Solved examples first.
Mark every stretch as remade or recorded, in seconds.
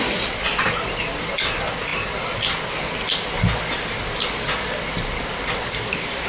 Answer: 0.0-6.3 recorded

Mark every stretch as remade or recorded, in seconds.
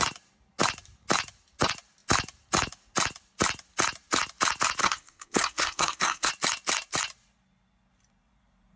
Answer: 0.0-4.8 recorded; 4.8-6.3 remade; 6.3-8.8 recorded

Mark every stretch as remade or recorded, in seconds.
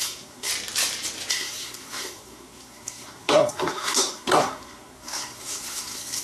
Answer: 0.0-0.5 remade; 0.5-1.3 recorded; 1.3-6.2 remade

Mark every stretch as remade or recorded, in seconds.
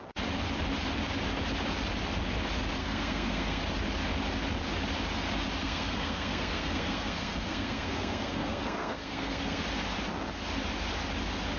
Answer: 0.0-2.8 recorded; 2.8-3.6 remade; 3.6-5.6 recorded; 5.6-9.6 remade; 9.6-11.6 recorded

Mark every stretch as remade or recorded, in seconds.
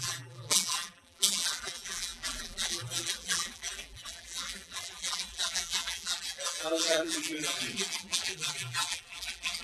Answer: 0.0-9.6 remade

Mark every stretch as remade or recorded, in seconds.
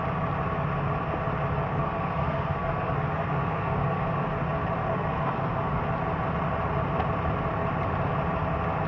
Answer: 0.0-1.7 recorded; 1.7-4.3 remade; 4.3-4.8 recorded; 4.8-5.8 remade; 5.8-8.9 recorded